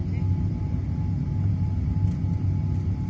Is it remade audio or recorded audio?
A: recorded